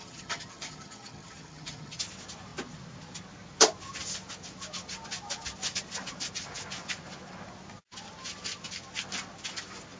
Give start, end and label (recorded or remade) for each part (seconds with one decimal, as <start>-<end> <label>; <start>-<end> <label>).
0.0-2.0 remade; 2.0-10.0 recorded